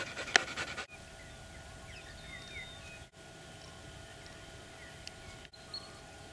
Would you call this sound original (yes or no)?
yes